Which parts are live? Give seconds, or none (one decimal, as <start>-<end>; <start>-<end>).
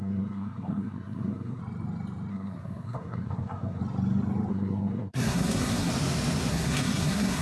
1.6-2.3; 3.8-4.5; 5.9-6.5